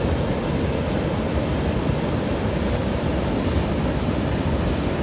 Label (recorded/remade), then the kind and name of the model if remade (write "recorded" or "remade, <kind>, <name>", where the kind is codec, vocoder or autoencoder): recorded